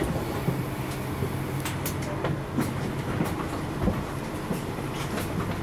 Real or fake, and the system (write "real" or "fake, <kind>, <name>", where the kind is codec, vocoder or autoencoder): real